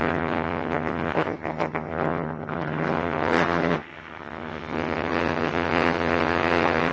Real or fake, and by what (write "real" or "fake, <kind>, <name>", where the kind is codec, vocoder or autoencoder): fake, vocoder, HiFi-GAN